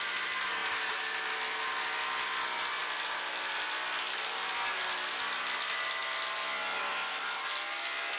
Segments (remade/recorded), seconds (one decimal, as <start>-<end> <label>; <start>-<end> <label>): 0.0-8.2 recorded